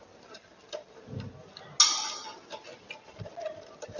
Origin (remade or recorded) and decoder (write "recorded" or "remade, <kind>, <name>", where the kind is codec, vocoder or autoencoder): recorded